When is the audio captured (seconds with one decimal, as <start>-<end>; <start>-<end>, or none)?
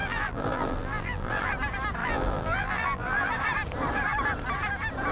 1.5-2.0; 3.3-5.1